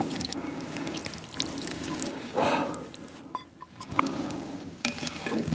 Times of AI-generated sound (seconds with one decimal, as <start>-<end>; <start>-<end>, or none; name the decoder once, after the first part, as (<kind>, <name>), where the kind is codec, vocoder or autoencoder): 0.0-1.0 (codec, DAC); 1.6-2.6; 3.7-5.5